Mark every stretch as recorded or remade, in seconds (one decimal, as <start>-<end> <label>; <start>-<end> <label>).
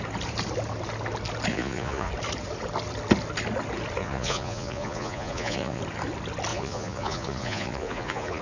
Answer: 0.0-1.5 recorded; 1.5-2.1 remade; 2.1-4.0 recorded; 4.0-5.8 remade; 5.8-6.5 recorded; 6.5-8.4 remade